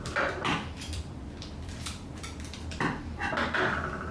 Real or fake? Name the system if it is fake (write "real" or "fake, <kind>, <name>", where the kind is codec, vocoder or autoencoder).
fake, vocoder, BigVGAN v2